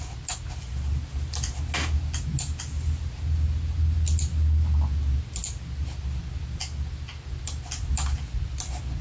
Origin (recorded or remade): recorded